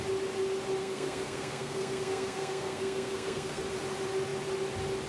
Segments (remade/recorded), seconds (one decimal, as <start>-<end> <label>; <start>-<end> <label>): 0.0-0.8 recorded; 0.8-3.6 remade; 3.6-5.1 recorded